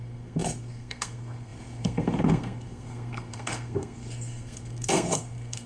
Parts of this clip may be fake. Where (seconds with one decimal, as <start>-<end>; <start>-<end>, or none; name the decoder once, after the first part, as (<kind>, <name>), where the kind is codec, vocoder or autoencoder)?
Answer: 0.0-5.7 (codec, SNAC)